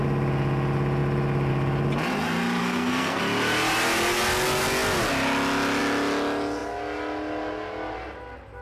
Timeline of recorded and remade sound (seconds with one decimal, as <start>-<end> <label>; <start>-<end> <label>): 0.0-2.6 recorded; 2.6-3.2 remade; 3.2-8.6 recorded